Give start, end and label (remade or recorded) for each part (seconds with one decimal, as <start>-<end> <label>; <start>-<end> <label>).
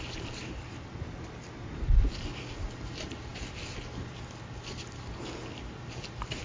0.0-6.4 recorded